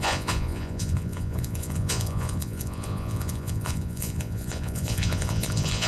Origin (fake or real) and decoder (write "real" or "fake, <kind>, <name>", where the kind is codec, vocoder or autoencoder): fake, vocoder, Vocos